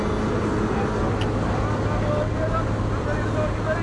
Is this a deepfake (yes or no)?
no